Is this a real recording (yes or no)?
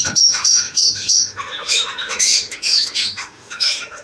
no